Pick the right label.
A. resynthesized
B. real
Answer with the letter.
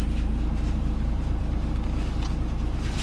B